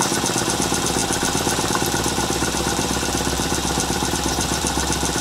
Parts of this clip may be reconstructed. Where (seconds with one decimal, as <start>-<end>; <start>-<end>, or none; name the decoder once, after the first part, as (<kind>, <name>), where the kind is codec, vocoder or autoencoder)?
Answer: 0.0-5.2 (vocoder, BigVGAN v2)